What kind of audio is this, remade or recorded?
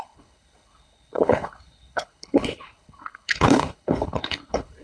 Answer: remade